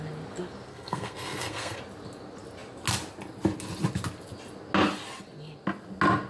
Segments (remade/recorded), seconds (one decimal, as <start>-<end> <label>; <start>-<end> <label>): 0.0-0.7 recorded; 0.7-1.8 remade; 1.8-6.3 recorded